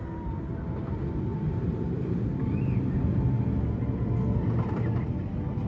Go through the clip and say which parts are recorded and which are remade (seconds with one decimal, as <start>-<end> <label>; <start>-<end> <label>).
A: 0.0-5.7 recorded